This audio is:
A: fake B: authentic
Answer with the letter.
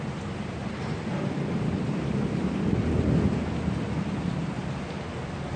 A